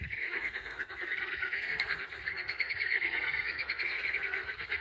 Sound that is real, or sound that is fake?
fake